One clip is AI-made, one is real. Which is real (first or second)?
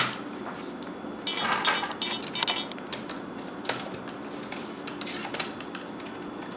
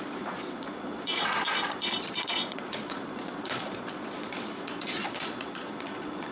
first